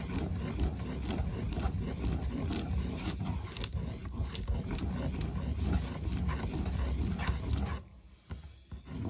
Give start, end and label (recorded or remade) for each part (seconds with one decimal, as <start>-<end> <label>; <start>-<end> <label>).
0.0-9.1 recorded